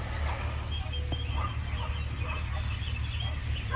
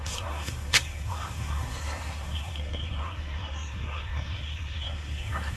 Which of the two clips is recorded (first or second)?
first